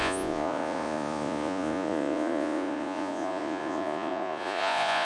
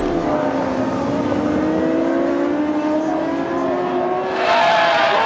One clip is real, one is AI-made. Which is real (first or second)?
second